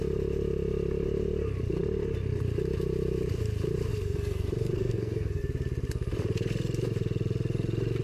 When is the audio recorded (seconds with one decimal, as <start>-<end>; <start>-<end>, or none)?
0.0-3.9; 5.4-8.0